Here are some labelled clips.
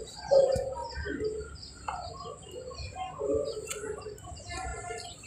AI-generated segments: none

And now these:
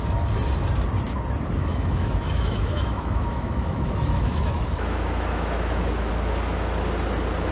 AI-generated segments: 1.6-6.1

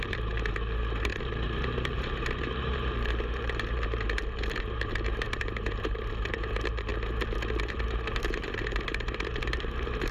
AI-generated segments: 0.0-1.1; 1.6-6.9; 7.6-10.1

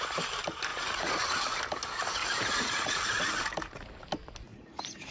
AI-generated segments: 0.7-1.3; 2.2-3.3; 4.5-5.1

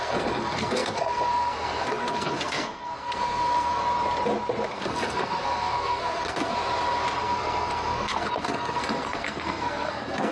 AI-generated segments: 0.0-3.8; 4.7-6.5; 7.2-10.3